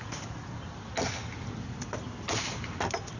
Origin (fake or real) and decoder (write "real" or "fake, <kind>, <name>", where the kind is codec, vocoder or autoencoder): real